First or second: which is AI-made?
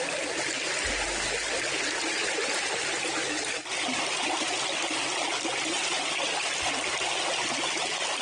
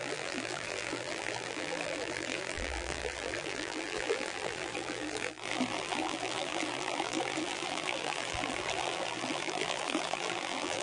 second